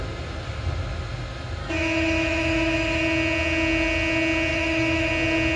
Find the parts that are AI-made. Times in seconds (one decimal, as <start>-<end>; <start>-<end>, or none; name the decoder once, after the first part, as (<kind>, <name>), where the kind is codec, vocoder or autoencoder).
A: 1.6-3.0 (autoencoder, DAC-VAE); 4.5-5.1